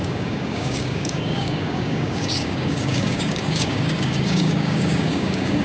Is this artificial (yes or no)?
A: yes